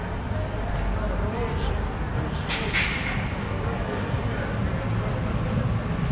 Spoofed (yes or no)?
no